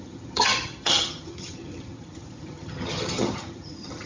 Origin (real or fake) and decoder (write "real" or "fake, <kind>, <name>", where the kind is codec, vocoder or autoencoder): fake, vocoder, HiFi-GAN